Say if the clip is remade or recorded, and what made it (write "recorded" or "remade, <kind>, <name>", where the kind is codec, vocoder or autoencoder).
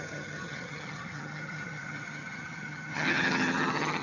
remade, vocoder, HiFi-GAN